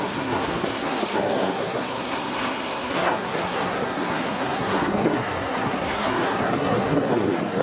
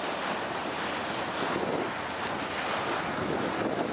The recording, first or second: second